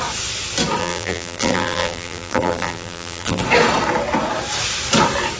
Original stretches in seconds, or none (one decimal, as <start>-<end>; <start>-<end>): 0.0-0.8; 3.4-5.4